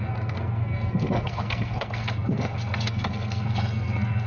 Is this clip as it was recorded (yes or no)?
no